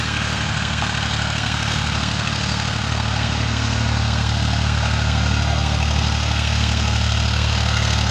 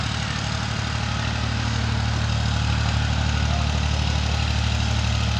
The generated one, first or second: first